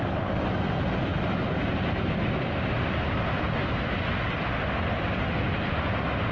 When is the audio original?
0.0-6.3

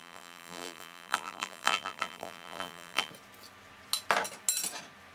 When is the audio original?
3.1-5.1

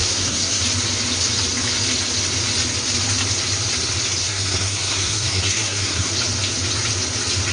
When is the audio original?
0.6-4.2; 6.1-7.5

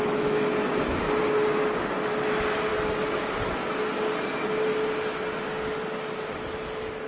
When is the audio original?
0.0-7.1